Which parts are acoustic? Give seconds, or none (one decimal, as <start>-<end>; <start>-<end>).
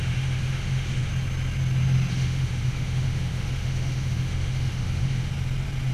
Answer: 1.1-2.1; 5.3-5.9